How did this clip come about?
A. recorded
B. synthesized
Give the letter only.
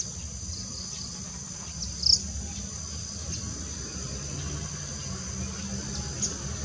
A